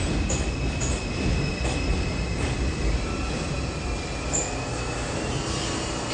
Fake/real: real